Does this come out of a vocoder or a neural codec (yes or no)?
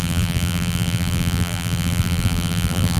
yes